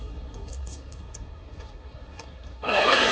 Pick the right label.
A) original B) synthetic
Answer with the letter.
B